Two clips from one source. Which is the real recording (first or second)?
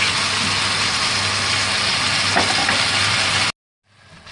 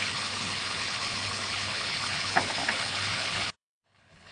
first